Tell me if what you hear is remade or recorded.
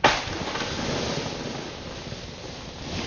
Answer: recorded